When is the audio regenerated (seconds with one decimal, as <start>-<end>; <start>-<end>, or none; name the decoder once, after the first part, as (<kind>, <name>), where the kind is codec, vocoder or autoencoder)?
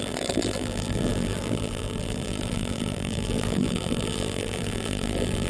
0.0-5.5 (vocoder, BigVGAN v2)